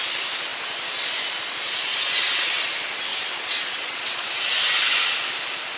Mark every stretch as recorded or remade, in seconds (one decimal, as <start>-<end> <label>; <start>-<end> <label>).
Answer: 0.0-1.9 recorded; 1.9-2.7 remade; 2.7-3.1 recorded; 3.1-4.9 remade; 4.9-5.8 recorded